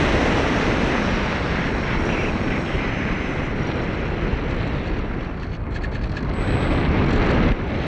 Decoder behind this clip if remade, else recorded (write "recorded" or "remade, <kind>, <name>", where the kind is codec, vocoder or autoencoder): recorded